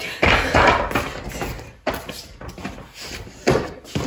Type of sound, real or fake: real